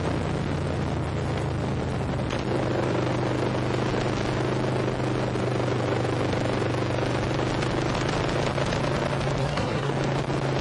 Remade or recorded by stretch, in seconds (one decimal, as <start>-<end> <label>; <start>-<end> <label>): 0.0-9.4 recorded; 9.4-9.9 remade; 9.9-10.6 recorded